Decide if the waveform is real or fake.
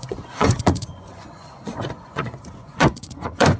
fake